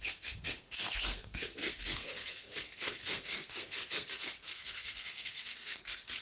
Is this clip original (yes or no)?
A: no